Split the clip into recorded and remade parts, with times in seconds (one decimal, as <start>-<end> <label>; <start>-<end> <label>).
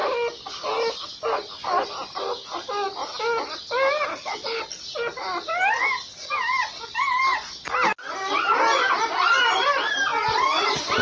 0.0-4.1 recorded; 4.1-4.6 remade; 4.6-11.0 recorded